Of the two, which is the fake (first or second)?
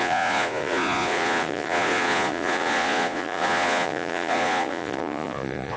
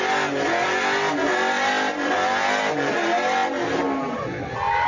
first